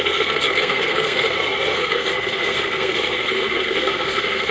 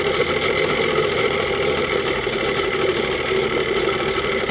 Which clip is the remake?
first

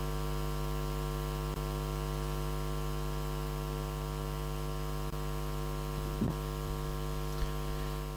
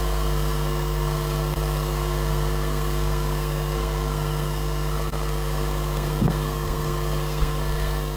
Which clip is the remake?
second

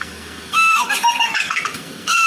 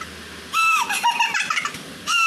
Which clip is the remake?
first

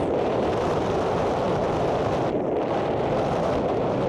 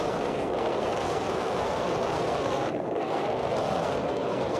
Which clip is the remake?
second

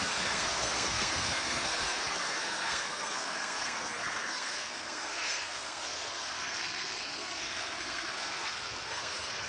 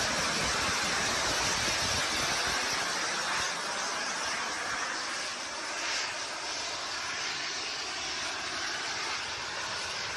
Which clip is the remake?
first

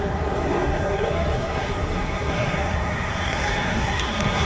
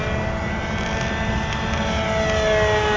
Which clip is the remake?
first